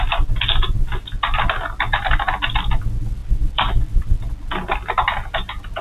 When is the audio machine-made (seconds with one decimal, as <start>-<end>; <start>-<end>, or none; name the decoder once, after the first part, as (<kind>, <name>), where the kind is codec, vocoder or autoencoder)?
3.2-4.3 (vocoder, BigVGAN v2)

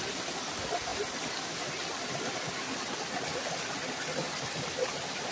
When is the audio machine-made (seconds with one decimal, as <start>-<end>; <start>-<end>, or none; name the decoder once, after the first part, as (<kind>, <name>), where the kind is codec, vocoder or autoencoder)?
none

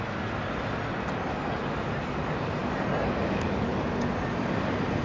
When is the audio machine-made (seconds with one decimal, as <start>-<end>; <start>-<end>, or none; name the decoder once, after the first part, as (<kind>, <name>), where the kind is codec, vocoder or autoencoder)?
3.7-5.0 (vocoder, BigVGAN v2)

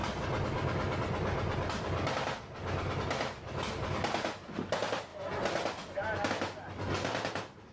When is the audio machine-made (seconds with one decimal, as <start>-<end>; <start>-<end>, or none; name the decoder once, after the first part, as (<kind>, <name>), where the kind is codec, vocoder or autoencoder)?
none

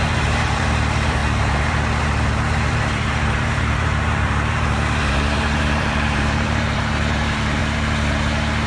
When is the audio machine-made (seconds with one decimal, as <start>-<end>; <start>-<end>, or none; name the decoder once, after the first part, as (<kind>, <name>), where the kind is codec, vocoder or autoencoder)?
0.0-7.6 (vocoder, BigVGAN v2)

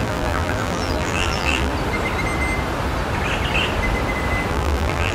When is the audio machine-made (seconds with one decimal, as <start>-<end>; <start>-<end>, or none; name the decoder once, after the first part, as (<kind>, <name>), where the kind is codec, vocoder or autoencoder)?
0.0-1.7 (vocoder, BigVGAN v2); 4.5-5.1